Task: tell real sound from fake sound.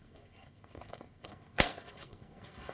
fake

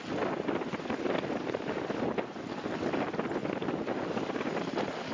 real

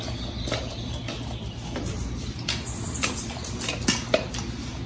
real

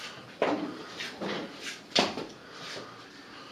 real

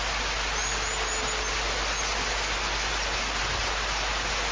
real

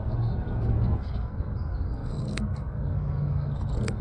fake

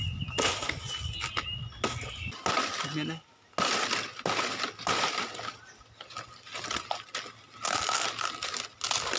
real